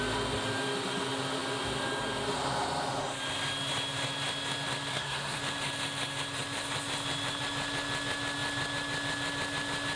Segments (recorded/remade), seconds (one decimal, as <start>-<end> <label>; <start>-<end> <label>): 0.0-4.9 recorded; 4.9-5.4 remade; 5.4-10.0 recorded